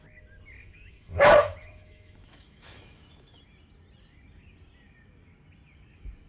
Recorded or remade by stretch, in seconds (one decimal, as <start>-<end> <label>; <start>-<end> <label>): 0.0-0.6 recorded; 0.6-3.4 remade; 3.4-6.3 recorded